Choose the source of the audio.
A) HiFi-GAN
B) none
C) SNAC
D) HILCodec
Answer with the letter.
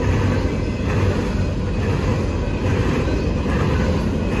B